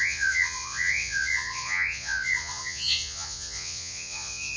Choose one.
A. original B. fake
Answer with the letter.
B